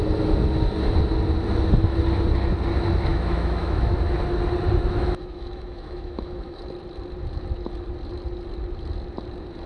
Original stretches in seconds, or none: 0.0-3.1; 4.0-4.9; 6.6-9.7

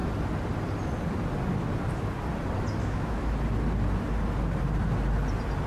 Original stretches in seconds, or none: 0.0-2.8; 3.3-5.7

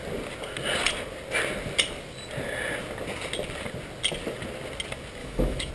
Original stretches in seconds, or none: 0.0-5.2

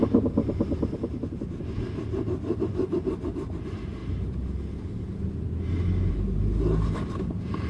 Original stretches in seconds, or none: 0.0-7.7

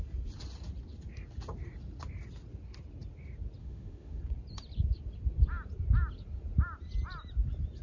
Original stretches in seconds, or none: 0.0-3.6; 4.2-7.8